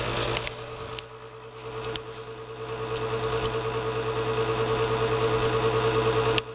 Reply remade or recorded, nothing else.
recorded